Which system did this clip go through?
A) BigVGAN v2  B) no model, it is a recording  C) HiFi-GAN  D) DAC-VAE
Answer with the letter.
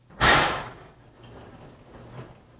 B